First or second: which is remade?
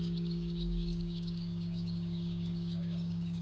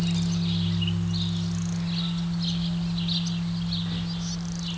first